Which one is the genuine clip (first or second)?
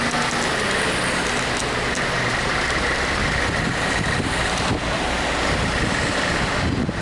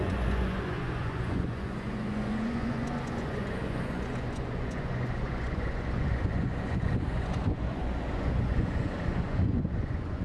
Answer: first